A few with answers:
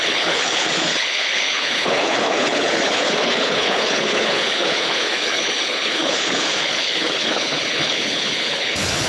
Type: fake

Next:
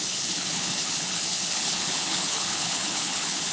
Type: fake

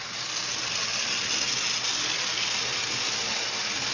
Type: real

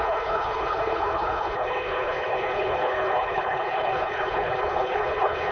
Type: fake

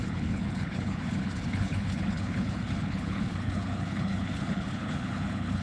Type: fake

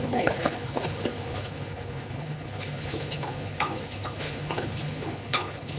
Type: fake